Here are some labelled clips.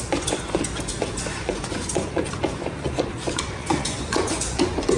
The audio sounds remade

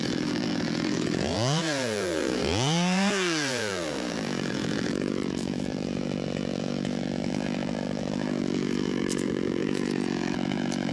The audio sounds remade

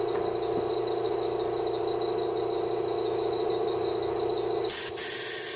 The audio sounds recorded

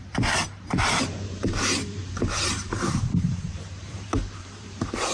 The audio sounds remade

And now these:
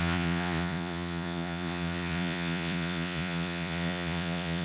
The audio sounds remade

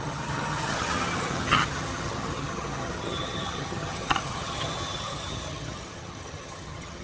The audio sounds remade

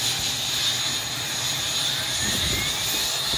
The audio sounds recorded